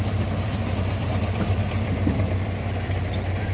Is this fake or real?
fake